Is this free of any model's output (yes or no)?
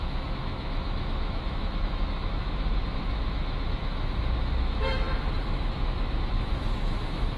no